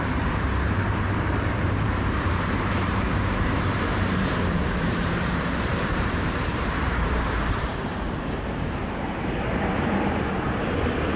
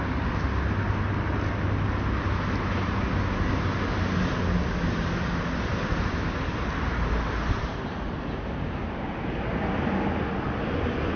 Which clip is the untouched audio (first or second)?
second